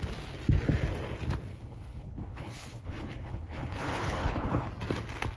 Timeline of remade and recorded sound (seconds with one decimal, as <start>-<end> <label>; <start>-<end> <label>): 0.0-1.5 recorded; 1.5-4.7 remade; 4.7-5.4 recorded